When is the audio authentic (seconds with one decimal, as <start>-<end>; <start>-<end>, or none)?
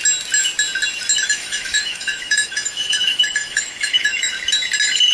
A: 0.0-1.2; 4.3-5.1